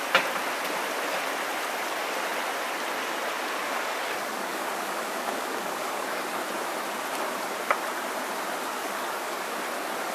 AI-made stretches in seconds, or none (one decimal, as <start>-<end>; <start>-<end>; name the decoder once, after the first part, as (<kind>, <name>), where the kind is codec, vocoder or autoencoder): 3.6-6.2 (codec, DAC); 8.8-9.6